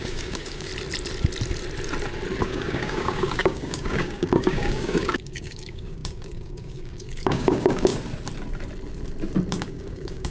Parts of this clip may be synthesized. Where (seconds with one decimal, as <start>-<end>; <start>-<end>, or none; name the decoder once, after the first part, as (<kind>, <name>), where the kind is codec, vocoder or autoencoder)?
0.0-0.7 (codec, DAC); 2.4-7.9; 9.5-10.3